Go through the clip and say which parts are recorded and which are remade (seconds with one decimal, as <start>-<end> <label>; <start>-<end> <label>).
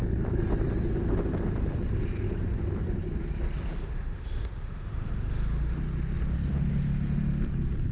0.0-3.7 recorded; 3.7-5.8 remade; 5.8-7.9 recorded